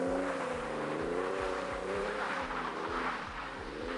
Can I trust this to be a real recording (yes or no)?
no